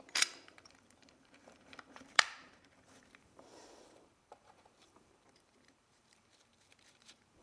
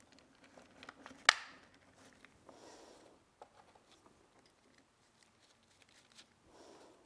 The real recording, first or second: second